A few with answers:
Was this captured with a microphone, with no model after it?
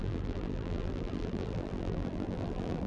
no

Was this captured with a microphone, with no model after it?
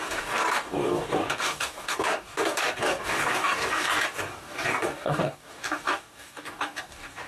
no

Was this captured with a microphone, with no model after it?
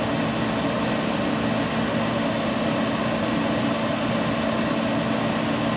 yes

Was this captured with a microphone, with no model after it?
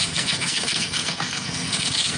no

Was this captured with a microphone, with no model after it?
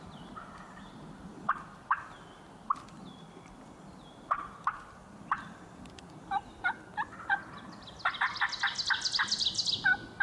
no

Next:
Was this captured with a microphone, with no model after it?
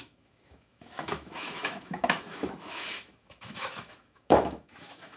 no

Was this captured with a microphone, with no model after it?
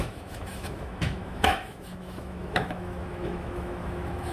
no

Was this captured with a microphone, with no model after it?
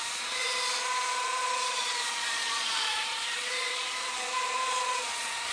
no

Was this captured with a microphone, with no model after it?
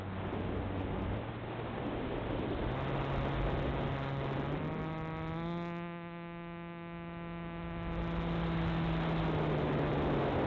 yes